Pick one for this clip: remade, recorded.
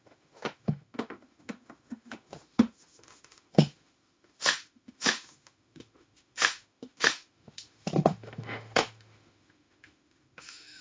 remade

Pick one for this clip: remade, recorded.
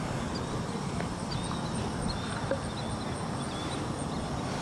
recorded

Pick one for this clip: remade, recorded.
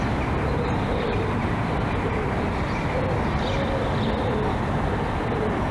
recorded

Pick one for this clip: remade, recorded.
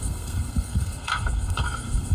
remade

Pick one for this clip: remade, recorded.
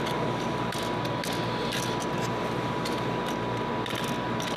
recorded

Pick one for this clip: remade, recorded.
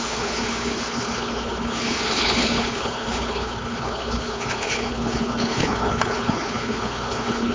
remade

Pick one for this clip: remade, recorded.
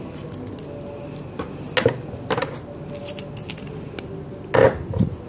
recorded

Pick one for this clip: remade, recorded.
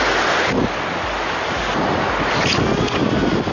recorded